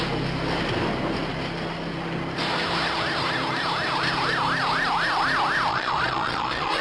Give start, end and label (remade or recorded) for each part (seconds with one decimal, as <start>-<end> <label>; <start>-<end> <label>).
0.0-5.7 recorded; 5.7-6.8 remade